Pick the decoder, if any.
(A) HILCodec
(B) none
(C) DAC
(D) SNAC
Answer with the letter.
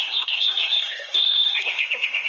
D